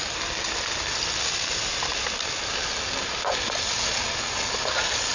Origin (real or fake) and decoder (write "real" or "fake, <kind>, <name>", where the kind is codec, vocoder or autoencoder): real